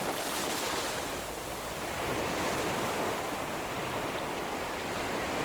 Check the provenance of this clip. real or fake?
real